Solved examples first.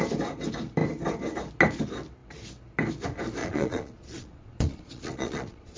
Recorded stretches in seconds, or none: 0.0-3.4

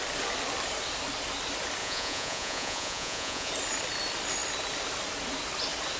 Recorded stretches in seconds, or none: 0.0-1.8; 3.5-6.0

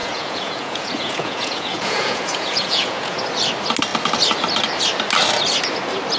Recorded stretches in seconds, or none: 3.2-6.2

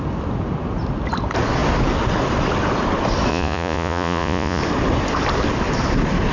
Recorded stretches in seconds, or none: 0.0-3.3; 4.6-6.3

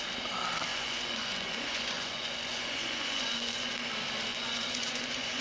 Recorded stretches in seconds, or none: 0.0-0.7; 3.9-4.3

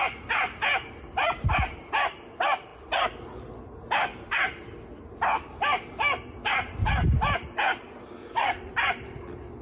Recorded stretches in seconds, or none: 0.0-8.2; 8.7-9.6

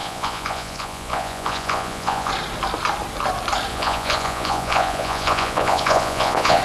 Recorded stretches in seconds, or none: 2.3-3.7

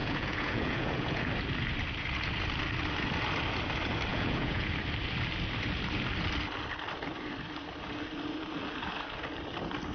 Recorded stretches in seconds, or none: 1.3-4.1; 4.7-9.9